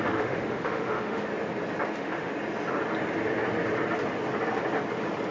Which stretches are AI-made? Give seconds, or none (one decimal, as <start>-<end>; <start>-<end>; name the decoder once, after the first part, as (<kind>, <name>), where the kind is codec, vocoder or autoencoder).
0.0-1.3 (autoencoder, DAC-VAE); 1.9-2.3